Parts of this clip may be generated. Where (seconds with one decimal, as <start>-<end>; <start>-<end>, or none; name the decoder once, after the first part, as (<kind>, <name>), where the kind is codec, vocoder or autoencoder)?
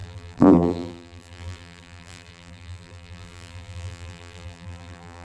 0.0-5.2 (vocoder, BigVGAN v2)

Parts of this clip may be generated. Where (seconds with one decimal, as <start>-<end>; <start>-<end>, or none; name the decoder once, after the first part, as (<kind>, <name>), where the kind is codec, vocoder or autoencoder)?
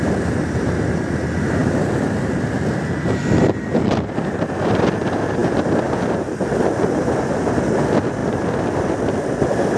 1.6-2.3 (vocoder, BigVGAN v2); 3.7-5.0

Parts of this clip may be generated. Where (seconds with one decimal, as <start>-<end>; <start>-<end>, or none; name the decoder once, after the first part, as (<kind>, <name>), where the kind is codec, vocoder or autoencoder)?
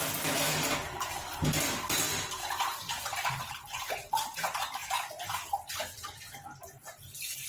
2.4-3.5 (vocoder, BigVGAN v2)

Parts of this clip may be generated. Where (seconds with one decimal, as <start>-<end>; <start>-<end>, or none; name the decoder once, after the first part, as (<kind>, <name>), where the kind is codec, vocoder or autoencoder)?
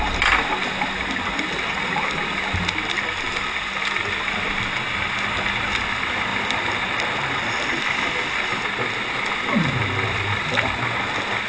6.3-8.6 (vocoder, BigVGAN v2)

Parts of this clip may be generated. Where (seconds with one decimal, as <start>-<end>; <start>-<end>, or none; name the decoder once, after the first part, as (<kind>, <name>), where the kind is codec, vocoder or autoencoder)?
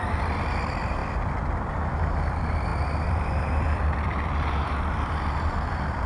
0.0-1.0 (vocoder, BigVGAN v2); 1.9-6.1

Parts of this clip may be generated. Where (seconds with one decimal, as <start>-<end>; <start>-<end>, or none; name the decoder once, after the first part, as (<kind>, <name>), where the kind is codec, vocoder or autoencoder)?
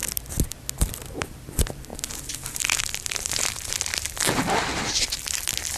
0.9-1.9 (vocoder, BigVGAN v2); 2.8-5.8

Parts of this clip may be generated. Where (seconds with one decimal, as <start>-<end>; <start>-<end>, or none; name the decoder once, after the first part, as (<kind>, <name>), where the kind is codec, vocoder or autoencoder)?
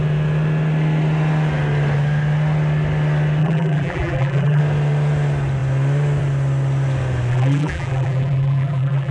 3.4-4.6 (vocoder, BigVGAN v2); 7.3-9.1